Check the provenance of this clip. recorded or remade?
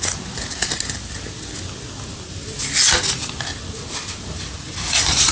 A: recorded